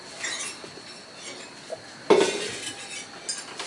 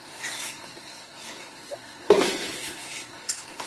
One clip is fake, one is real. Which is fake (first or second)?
second